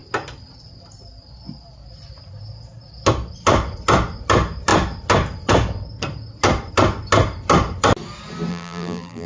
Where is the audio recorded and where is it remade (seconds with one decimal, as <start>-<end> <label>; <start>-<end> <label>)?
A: 0.0-8.5 recorded; 8.5-9.3 remade